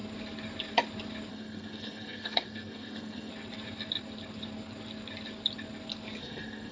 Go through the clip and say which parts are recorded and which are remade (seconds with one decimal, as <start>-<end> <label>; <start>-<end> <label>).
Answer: 0.0-1.3 recorded; 1.3-3.3 remade; 3.3-6.2 recorded; 6.2-6.7 remade